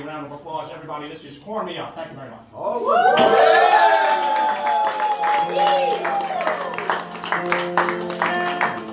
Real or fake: real